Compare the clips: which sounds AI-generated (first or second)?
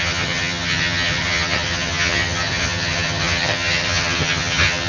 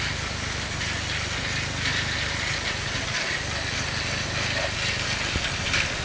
first